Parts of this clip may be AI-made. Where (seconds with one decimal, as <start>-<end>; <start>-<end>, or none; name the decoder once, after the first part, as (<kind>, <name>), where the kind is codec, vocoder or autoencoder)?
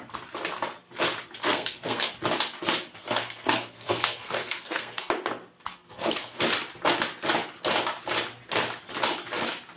1.4-2.1 (codec, SNAC); 3.0-5.1; 5.7-6.4